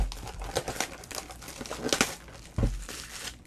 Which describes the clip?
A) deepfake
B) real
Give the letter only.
B